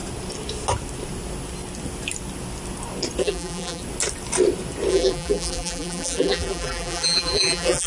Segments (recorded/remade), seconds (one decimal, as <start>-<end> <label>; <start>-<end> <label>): 0.0-3.2 recorded; 3.2-3.8 remade; 3.8-4.9 recorded; 4.9-7.9 remade